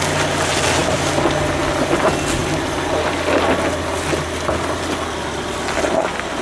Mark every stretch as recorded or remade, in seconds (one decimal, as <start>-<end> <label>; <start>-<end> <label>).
0.0-6.4 recorded